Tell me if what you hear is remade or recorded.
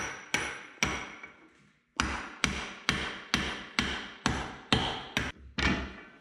recorded